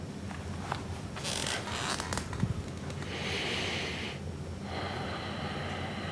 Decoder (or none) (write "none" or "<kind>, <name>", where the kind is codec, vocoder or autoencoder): none